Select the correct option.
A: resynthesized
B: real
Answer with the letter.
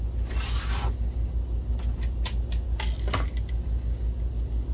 B